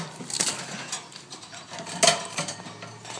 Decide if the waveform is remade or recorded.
recorded